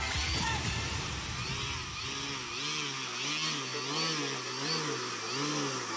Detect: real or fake real